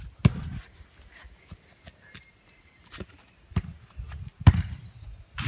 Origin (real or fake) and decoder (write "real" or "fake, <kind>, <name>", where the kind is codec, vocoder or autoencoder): real